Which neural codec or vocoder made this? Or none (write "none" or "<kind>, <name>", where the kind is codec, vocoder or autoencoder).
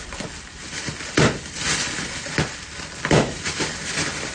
none